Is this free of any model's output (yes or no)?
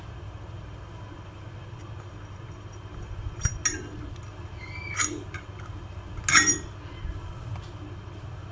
yes